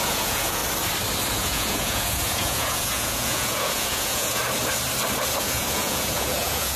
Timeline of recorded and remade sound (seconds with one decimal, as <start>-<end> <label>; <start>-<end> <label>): 0.0-0.6 remade; 0.6-1.3 recorded; 1.3-4.4 remade; 4.4-5.4 recorded; 5.4-6.8 remade

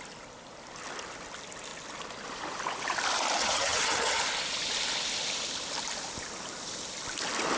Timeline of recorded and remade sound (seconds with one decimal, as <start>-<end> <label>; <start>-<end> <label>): 0.0-3.4 recorded; 3.4-4.2 remade; 4.2-7.6 recorded

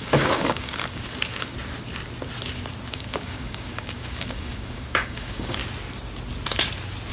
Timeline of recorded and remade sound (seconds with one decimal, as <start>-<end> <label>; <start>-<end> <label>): 0.0-1.5 remade; 1.5-2.9 recorded; 2.9-5.6 remade; 5.6-7.1 recorded

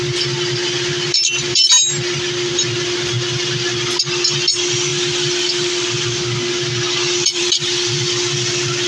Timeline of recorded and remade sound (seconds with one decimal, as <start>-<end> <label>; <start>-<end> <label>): 0.0-8.9 recorded

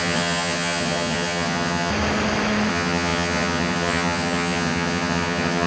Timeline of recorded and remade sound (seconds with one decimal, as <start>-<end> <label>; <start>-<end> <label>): 0.0-1.9 remade; 1.9-2.7 recorded; 2.7-5.7 remade